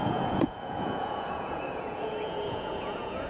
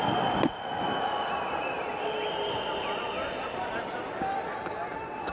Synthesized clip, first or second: first